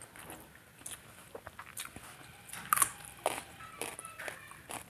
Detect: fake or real real